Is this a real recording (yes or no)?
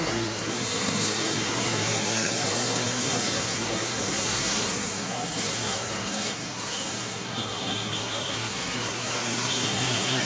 no